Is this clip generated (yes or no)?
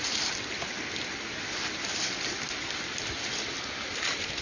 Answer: no